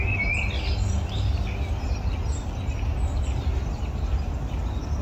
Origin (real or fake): real